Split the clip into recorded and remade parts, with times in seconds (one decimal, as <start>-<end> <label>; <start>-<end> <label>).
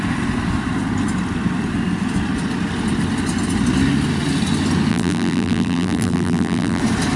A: 0.0-4.9 recorded; 4.9-6.8 remade; 6.8-7.2 recorded